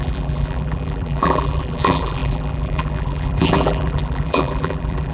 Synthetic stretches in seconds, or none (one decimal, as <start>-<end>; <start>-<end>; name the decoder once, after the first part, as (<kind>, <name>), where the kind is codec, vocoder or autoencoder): 0.0-5.1 (vocoder, BigVGAN v2)